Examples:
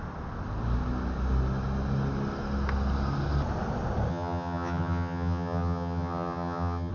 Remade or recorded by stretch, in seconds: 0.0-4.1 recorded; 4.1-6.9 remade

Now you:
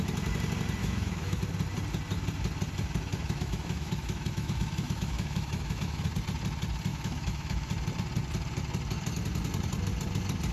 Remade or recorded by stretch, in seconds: 0.0-0.8 recorded; 0.8-1.4 remade; 1.4-3.1 recorded; 3.1-6.1 remade; 6.1-6.9 recorded; 6.9-7.7 remade; 7.7-10.5 recorded